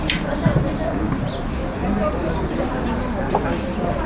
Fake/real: real